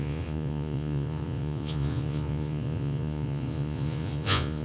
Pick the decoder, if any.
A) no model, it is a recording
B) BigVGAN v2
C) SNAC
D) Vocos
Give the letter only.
D